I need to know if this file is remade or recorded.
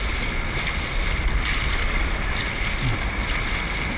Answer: recorded